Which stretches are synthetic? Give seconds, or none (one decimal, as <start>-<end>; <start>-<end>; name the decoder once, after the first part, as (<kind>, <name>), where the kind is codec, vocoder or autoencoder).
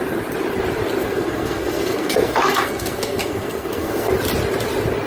1.0-4.1 (codec, SNAC)